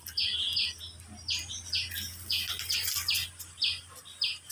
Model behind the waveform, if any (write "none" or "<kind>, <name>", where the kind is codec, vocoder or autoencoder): none